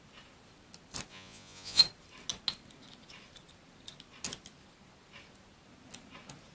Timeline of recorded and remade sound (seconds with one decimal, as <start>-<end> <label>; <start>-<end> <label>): 0.0-1.1 recorded; 1.1-1.8 remade; 1.8-6.5 recorded